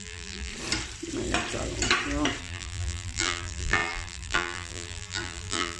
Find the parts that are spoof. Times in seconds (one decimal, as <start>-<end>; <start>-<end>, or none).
0.0-0.5; 2.4-5.8